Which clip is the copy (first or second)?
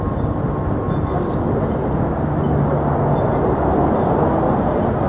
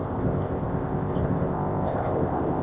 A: second